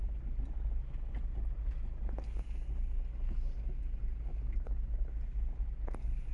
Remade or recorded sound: recorded